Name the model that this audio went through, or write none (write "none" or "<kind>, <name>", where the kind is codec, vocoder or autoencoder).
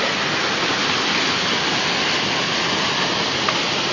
none